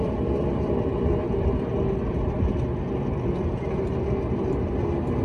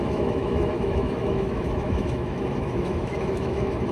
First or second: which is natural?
first